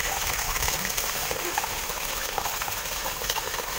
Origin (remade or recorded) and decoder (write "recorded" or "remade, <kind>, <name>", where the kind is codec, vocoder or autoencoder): remade, autoencoder, DAC-VAE